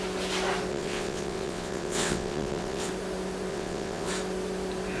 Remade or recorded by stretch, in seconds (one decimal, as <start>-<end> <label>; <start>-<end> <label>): 0.0-0.7 recorded; 0.7-2.9 remade; 2.9-3.5 recorded; 3.5-4.1 remade; 4.1-5.0 recorded